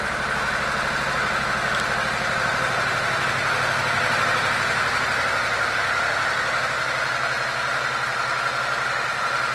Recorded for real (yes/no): yes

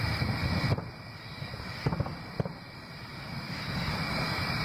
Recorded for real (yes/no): yes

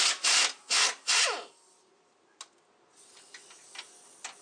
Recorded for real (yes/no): yes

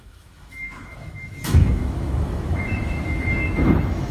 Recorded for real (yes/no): no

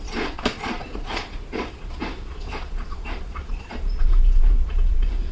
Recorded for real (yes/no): no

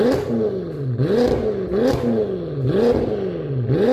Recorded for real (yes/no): yes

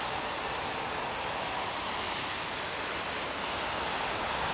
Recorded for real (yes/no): yes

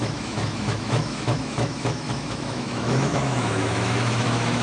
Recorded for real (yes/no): no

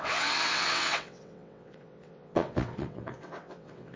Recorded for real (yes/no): no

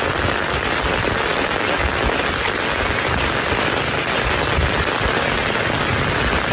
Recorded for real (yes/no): yes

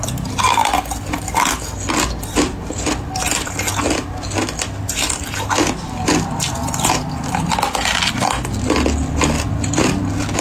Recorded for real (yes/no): yes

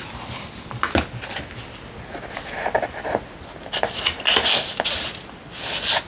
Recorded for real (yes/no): yes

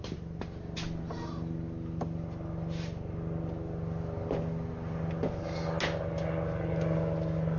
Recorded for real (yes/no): yes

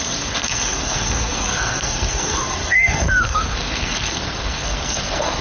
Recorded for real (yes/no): no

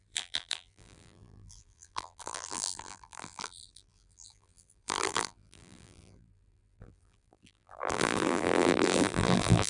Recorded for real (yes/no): no